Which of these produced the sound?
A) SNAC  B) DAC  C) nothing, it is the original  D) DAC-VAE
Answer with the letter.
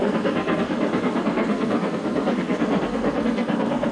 A